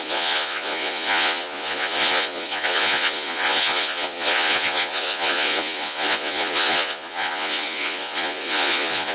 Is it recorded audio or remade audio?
remade